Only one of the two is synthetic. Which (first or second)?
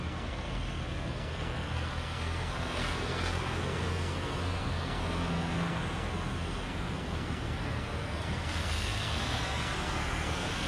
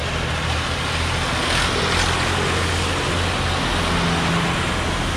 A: first